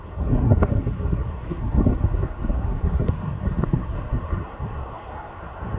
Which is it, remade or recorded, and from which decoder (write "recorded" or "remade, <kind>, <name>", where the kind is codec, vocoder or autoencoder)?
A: remade, codec, SNAC